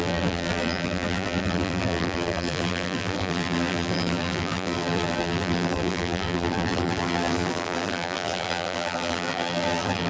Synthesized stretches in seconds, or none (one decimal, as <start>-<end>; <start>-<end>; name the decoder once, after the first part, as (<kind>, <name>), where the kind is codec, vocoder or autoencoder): 0.0-10.1 (vocoder, BigVGAN v2)